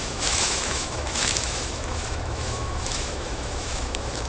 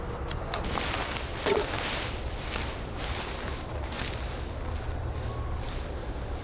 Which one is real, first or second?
second